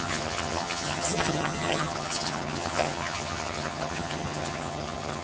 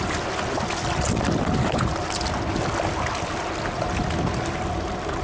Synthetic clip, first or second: first